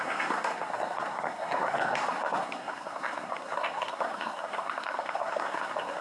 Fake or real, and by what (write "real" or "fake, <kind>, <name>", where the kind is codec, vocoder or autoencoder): fake, codec, SNAC